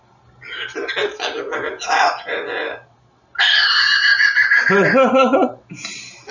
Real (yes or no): yes